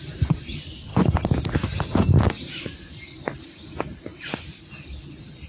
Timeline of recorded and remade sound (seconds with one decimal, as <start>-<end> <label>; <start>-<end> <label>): 0.0-4.1 recorded; 4.1-4.7 remade; 4.7-5.5 recorded